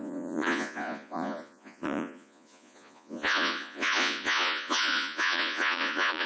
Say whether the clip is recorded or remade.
remade